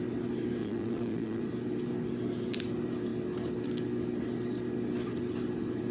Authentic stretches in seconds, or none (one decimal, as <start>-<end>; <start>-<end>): 0.0-0.6; 1.4-5.9